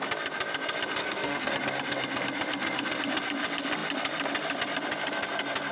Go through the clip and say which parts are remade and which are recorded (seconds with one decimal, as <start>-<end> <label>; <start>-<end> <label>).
0.0-1.0 recorded; 1.0-1.5 remade; 1.5-5.7 recorded